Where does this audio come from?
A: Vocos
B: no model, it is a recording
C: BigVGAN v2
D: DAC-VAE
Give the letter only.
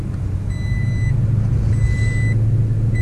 B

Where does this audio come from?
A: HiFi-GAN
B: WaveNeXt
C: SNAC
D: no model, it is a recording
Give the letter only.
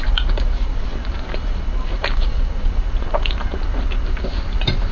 D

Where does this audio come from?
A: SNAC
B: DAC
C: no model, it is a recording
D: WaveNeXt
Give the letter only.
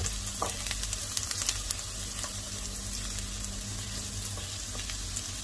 C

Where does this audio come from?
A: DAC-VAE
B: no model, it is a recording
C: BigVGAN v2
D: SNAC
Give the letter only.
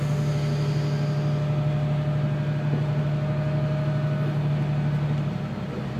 B